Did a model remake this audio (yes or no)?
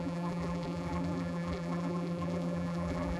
yes